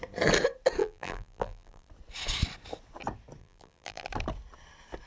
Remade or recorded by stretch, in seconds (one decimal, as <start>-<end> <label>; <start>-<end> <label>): 0.0-0.8 recorded; 0.8-1.9 remade; 1.9-3.4 recorded; 3.4-4.1 remade; 4.1-5.1 recorded